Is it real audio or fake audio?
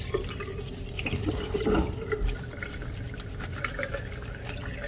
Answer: fake